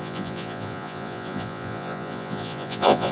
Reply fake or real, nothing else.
fake